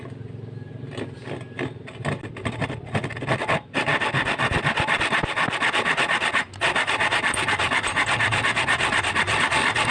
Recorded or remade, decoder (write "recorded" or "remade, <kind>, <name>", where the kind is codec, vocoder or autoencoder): recorded